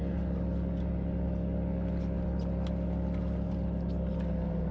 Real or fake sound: real